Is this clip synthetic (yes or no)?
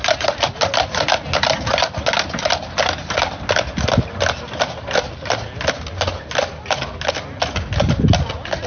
no